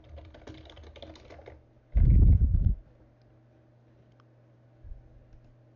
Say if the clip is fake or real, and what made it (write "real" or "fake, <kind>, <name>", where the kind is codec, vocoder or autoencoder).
real